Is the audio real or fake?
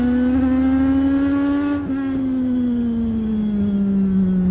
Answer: real